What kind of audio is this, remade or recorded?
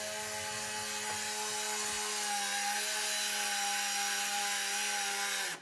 recorded